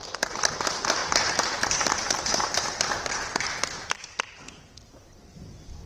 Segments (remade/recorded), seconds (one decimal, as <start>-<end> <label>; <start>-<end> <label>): 0.0-0.5 remade; 0.5-1.0 recorded; 1.0-4.5 remade; 4.5-5.9 recorded